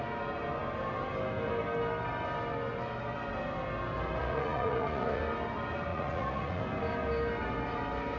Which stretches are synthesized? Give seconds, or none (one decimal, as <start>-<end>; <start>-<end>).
4.2-5.2; 5.9-6.6